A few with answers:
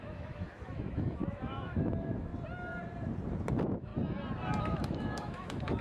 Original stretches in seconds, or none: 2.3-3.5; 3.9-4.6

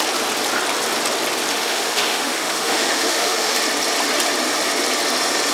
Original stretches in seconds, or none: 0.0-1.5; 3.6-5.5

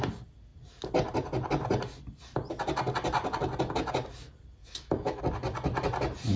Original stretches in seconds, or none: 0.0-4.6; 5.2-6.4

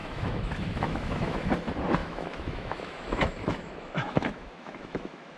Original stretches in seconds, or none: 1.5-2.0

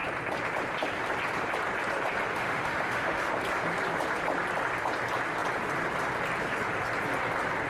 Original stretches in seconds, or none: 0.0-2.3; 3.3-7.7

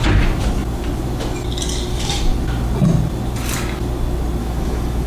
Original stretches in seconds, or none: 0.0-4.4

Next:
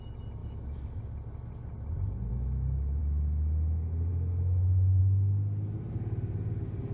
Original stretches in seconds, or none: 0.0-0.4; 1.0-2.3; 3.0-4.1; 5.0-6.9

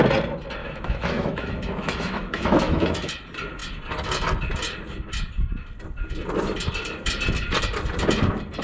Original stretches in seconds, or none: 0.0-0.6; 3.1-8.6